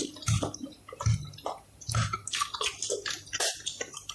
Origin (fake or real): real